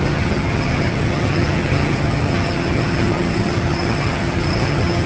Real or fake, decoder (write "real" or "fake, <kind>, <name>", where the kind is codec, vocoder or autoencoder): fake, vocoder, HiFi-GAN